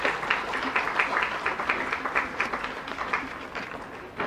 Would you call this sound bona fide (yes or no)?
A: yes